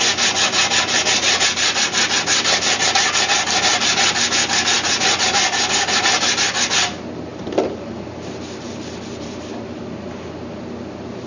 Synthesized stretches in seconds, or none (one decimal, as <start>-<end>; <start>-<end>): 7.3-9.6